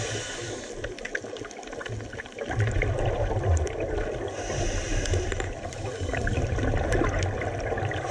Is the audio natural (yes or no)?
yes